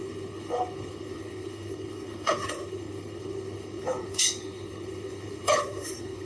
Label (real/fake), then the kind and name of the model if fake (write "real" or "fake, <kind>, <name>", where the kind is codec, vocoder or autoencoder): fake, codec, HILCodec